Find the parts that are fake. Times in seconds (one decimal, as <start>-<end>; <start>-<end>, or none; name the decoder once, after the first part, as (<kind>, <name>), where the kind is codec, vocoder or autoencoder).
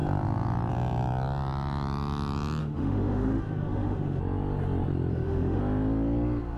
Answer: 2.6-4.2 (autoencoder, DAC-VAE); 5.1-5.6